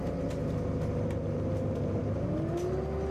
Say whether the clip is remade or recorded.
recorded